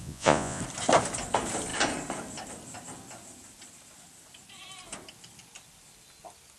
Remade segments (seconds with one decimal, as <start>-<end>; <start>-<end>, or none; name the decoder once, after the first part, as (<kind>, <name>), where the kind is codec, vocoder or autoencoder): 0.0-0.6 (vocoder, Vocos)